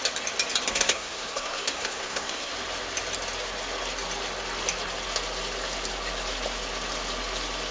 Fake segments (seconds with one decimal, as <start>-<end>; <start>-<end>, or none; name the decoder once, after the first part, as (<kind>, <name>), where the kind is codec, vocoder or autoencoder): 0.7-2.5 (codec, SNAC)